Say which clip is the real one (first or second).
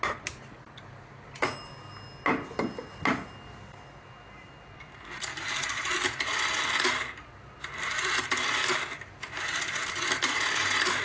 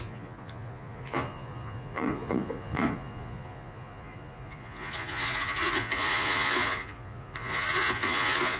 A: first